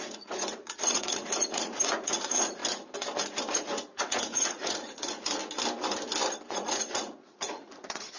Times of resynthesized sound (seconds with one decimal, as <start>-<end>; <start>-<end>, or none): 0.0-2.6; 3.4-5.4; 6.5-8.2